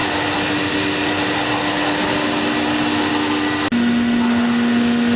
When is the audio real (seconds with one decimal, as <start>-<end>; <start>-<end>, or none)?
0.0-5.2